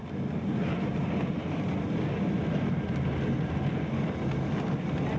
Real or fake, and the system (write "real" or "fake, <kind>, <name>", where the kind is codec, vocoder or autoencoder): real